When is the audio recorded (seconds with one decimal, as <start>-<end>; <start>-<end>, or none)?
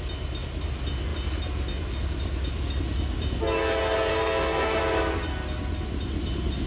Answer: 0.0-4.1; 4.8-6.7